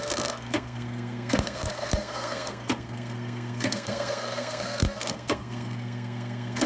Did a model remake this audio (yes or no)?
yes